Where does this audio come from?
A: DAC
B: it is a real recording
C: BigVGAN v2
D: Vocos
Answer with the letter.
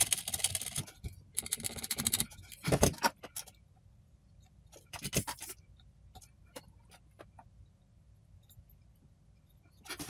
B